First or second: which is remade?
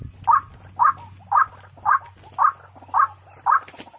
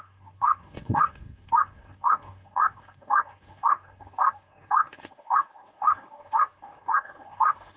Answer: second